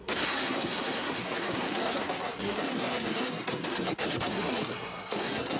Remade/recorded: remade